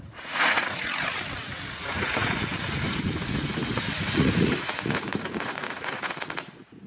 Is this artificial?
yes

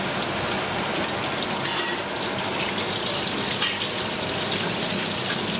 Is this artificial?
no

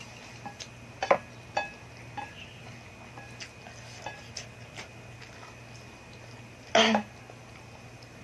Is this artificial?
no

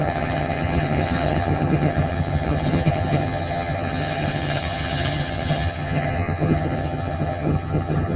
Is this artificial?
yes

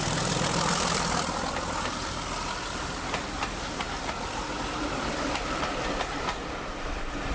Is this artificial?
yes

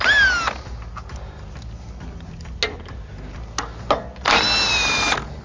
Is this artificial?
no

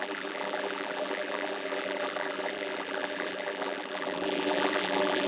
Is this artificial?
yes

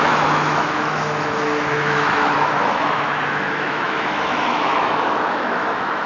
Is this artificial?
yes